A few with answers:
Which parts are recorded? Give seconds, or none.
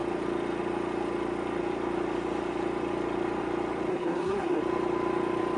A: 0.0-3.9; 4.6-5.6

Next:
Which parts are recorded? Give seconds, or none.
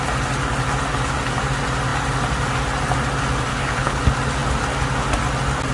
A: 0.0-3.5; 4.0-5.7